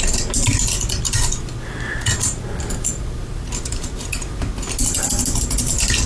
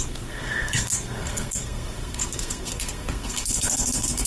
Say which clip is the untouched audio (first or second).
first